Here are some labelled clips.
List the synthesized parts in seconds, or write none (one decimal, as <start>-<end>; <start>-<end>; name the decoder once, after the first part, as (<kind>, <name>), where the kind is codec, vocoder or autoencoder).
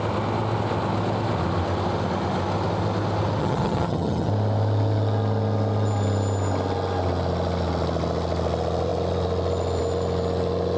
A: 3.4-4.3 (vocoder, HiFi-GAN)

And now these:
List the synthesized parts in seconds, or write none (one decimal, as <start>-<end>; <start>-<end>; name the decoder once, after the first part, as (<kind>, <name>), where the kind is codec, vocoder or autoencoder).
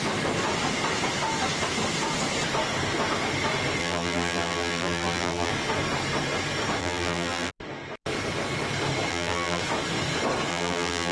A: 3.8-5.5 (vocoder, BigVGAN v2); 6.8-7.5; 9.1-9.6; 10.5-11.1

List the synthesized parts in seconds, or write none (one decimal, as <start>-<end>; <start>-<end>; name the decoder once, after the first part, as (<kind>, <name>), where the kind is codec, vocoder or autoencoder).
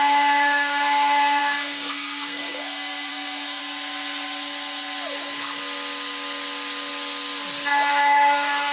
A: 0.0-3.6 (codec, SNAC); 7.9-8.7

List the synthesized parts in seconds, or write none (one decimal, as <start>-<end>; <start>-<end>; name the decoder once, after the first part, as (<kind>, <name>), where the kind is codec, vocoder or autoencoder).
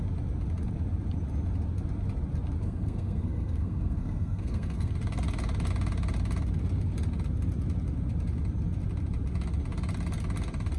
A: 2.6-4.9 (codec, SNAC)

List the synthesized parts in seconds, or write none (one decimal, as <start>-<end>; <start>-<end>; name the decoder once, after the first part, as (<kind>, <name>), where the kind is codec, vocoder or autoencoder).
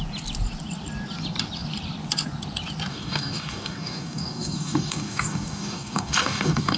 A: 2.9-6.8 (codec, DAC)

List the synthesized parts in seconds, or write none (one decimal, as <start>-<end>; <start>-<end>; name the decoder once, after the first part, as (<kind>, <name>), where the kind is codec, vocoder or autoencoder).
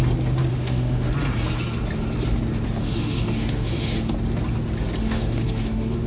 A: 0.5-1.1 (autoencoder, DAC-VAE); 2.8-4.1; 5.0-6.1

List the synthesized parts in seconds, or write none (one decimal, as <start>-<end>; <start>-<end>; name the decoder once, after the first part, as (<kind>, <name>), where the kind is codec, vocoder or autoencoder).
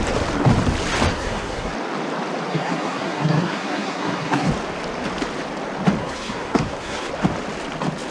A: 1.1-1.7 (codec, SNAC); 2.5-4.5; 6.0-7.1